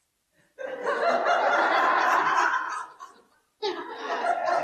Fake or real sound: real